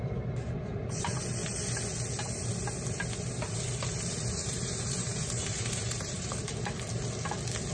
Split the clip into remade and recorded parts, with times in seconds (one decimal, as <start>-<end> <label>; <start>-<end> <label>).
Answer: 0.0-4.4 recorded; 4.4-6.3 remade; 6.3-7.7 recorded